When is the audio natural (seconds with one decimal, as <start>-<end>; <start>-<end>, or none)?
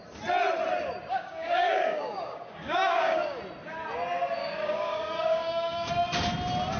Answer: 0.0-1.1; 3.4-4.4; 5.9-6.8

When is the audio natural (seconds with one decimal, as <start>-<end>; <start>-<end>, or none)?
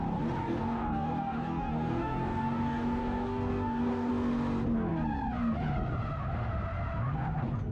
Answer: 0.0-0.4; 4.1-7.7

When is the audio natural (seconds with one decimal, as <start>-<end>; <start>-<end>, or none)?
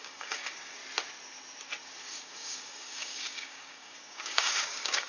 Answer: 0.8-2.0